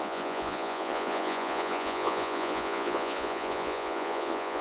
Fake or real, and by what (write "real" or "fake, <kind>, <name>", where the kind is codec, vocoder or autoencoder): fake, vocoder, Vocos